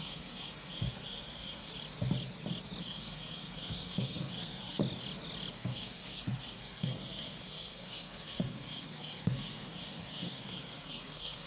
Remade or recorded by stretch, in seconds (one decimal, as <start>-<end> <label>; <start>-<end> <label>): 0.0-1.7 remade; 1.7-2.8 recorded; 2.8-4.8 remade; 4.8-5.5 recorded; 5.5-11.5 remade